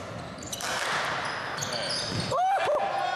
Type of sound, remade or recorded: recorded